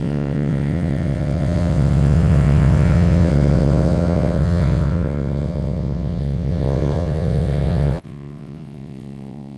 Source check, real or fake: fake